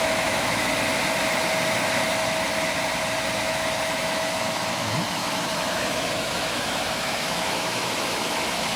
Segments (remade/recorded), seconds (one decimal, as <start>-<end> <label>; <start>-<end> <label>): 0.0-0.7 remade; 0.7-3.4 recorded; 3.4-8.8 remade